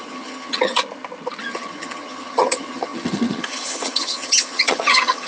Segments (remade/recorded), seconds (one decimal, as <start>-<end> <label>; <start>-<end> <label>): 0.0-0.8 remade; 0.8-1.4 recorded; 1.4-5.3 remade